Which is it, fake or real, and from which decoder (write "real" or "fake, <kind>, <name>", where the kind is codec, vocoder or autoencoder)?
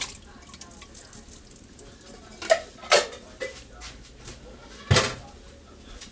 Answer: real